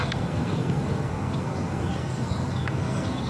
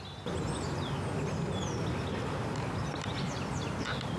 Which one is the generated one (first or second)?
first